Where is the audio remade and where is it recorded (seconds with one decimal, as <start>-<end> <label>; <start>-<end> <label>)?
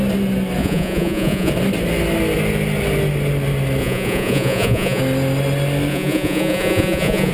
0.0-0.6 recorded; 0.6-1.5 remade; 1.5-3.8 recorded; 3.8-5.0 remade; 5.0-5.9 recorded; 5.9-7.3 remade